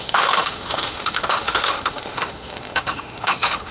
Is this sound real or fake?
fake